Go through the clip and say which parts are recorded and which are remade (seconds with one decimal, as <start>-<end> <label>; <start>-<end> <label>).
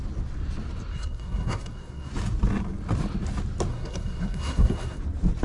0.0-0.9 recorded; 0.9-2.1 remade; 2.1-3.7 recorded; 3.7-5.0 remade; 5.0-5.4 recorded